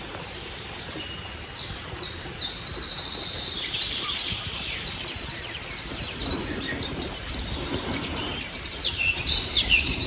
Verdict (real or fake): fake